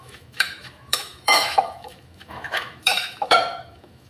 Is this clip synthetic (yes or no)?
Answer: yes